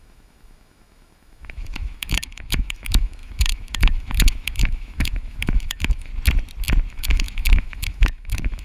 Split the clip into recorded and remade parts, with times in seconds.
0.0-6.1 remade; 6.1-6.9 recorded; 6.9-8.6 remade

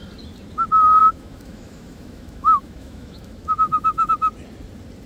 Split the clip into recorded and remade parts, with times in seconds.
0.0-1.0 recorded; 1.0-4.1 remade; 4.1-5.1 recorded

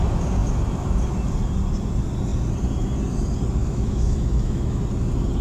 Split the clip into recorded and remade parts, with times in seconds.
0.0-3.6 recorded; 3.6-4.8 remade; 4.8-5.4 recorded

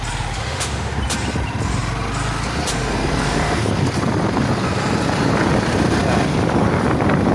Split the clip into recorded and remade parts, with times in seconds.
0.0-0.4 recorded; 0.4-1.0 remade; 1.0-7.3 recorded

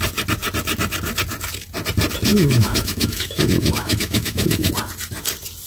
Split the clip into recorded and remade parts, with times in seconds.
0.0-2.3 recorded; 2.3-4.7 remade; 4.7-5.7 recorded